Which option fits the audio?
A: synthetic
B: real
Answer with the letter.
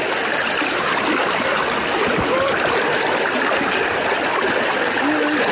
B